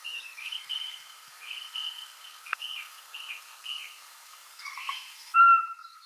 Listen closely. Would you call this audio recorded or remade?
remade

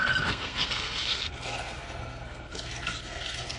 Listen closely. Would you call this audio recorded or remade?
remade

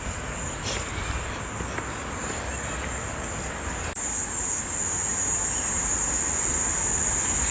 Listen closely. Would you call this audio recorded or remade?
recorded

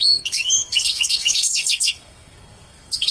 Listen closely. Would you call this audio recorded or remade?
remade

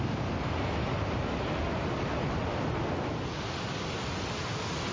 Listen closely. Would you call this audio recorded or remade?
recorded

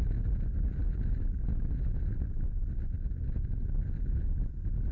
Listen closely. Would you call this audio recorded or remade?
recorded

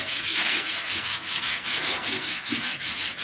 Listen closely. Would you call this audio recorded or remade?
remade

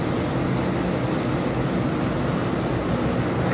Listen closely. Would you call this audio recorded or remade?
recorded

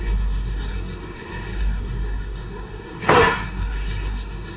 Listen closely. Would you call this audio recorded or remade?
remade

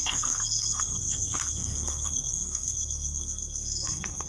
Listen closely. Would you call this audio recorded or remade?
remade